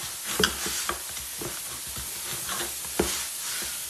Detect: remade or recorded recorded